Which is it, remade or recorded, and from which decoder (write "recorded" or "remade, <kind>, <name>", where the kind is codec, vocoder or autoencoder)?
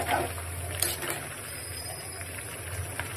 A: recorded